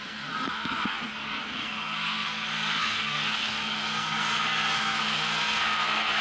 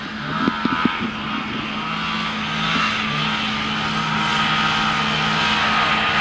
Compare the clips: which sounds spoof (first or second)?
first